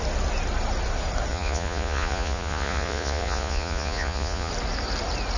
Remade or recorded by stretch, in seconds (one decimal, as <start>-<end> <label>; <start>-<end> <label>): 0.0-1.3 recorded; 1.3-4.5 remade; 4.5-5.4 recorded